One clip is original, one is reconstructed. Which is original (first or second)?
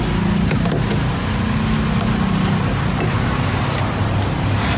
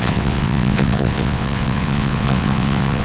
first